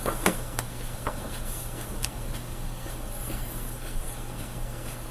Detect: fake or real fake